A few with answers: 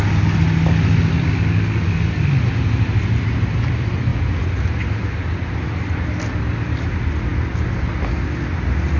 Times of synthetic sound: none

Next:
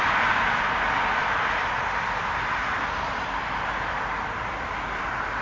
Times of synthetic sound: none

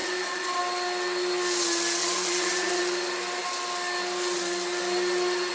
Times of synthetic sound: 0.0-0.6 (vocoder, Vocos); 2.0-2.8

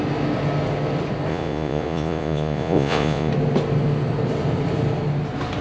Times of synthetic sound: 1.3-3.3 (vocoder, Vocos)

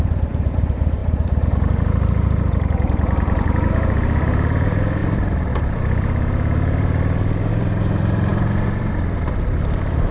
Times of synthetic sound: 0.0-10.1 (vocoder, BigVGAN v2)

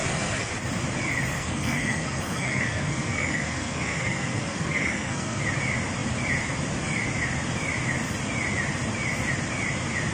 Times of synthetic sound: 0.0-0.5 (codec, SNAC); 1.3-5.4